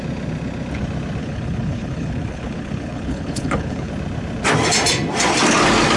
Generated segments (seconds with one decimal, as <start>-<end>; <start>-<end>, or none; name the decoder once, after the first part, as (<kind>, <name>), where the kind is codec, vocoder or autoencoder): 1.2-3.9 (codec, HILCodec)